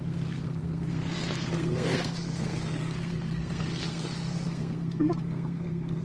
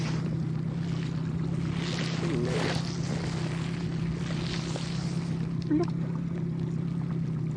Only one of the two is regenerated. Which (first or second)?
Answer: first